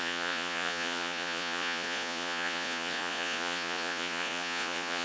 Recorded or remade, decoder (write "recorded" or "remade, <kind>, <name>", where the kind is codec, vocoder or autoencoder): remade, vocoder, Vocos